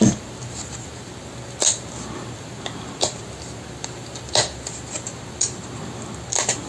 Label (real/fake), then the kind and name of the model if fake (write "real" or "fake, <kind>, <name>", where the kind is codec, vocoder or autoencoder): real